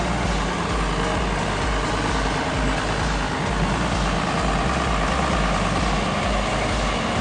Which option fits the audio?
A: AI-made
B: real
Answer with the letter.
B